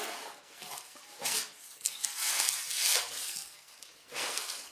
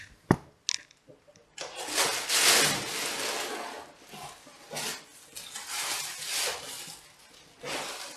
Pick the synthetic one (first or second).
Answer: first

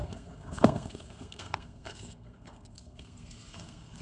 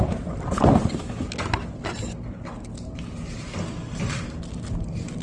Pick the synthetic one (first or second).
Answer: first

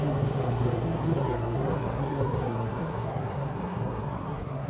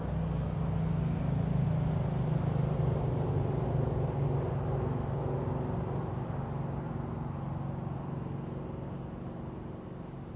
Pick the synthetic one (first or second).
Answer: first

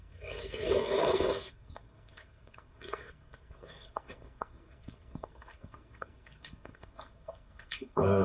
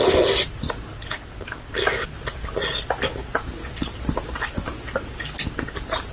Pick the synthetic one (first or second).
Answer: first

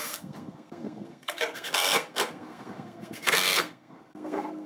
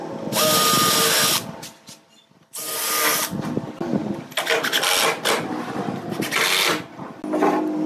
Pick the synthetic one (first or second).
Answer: first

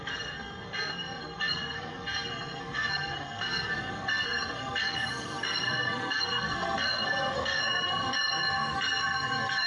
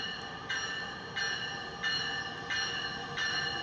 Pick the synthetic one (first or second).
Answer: first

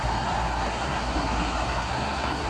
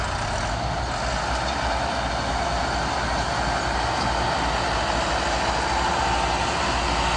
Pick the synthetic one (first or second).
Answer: first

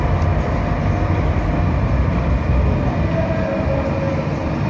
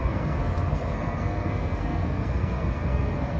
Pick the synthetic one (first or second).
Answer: second